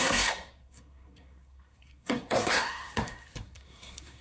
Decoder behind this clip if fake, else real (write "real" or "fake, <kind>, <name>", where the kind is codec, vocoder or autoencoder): fake, codec, SNAC